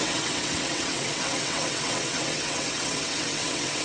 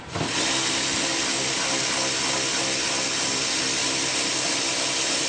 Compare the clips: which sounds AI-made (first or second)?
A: first